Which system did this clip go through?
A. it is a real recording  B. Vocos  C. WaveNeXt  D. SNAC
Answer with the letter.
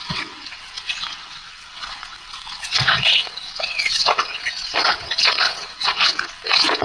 C